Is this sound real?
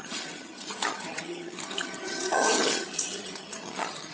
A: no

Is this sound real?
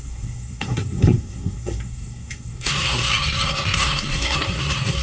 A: no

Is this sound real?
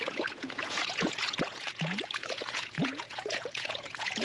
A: no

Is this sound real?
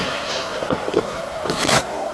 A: no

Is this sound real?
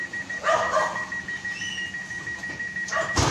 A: yes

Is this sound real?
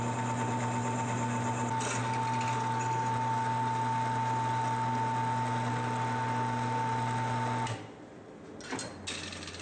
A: yes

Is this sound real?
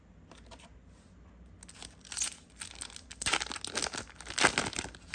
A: yes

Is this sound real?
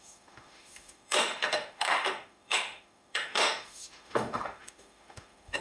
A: no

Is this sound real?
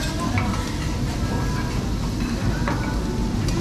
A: yes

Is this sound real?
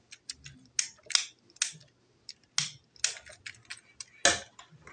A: yes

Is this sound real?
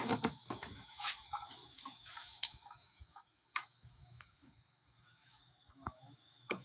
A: no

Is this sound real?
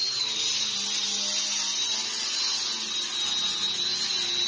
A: yes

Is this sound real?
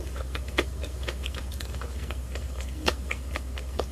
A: no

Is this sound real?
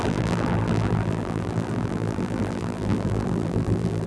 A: no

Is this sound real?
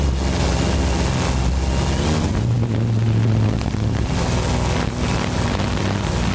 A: yes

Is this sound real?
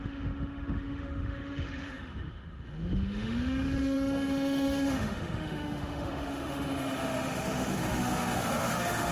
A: no